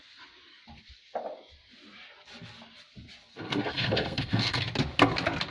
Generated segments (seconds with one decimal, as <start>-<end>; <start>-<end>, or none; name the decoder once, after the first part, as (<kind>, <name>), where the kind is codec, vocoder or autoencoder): 3.3-4.6 (codec, SNAC)